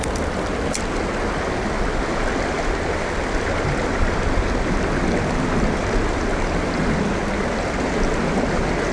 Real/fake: real